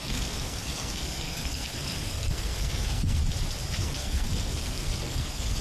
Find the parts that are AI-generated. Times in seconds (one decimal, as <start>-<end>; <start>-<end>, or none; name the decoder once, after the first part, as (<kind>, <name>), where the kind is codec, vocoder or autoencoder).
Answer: 0.0-3.2 (codec, SNAC); 3.8-5.6